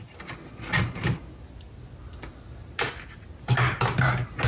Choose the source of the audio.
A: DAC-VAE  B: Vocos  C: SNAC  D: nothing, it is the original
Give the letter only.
D